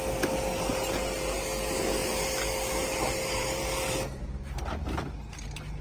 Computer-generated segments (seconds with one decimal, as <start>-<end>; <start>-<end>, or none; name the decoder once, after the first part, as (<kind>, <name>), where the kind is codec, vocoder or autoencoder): 0.5-1.4 (vocoder, BigVGAN v2); 2.0-5.8